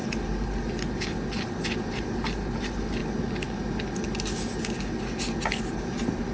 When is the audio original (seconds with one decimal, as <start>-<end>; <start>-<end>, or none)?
0.0-1.9; 3.0-5.6